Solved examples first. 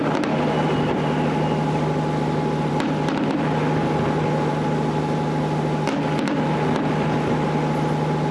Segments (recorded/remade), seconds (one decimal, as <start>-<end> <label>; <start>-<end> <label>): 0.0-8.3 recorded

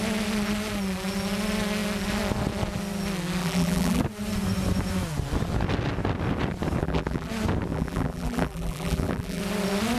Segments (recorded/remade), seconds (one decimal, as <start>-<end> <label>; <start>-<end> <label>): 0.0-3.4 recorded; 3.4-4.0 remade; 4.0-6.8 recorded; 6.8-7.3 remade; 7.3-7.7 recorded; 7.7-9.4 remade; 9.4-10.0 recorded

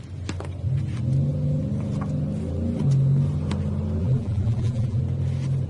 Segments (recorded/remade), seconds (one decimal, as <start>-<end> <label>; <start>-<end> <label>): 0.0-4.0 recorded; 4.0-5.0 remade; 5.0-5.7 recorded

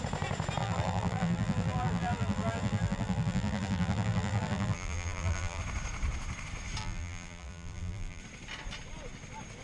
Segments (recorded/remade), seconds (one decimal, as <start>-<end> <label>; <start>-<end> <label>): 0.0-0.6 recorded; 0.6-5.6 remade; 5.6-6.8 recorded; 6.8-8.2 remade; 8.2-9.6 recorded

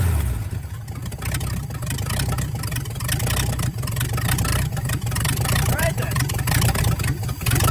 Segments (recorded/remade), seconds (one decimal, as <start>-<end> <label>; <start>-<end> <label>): 0.0-4.5 recorded; 4.5-6.8 remade; 6.8-7.7 recorded

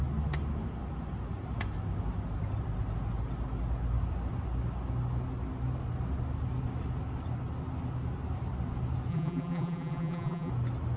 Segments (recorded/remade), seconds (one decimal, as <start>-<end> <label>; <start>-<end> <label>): 0.0-9.1 recorded; 9.1-10.5 remade; 10.5-11.0 recorded